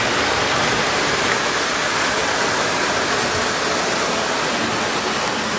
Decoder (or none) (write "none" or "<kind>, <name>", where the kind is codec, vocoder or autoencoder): none